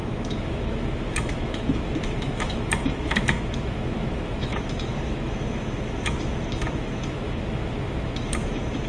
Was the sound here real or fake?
fake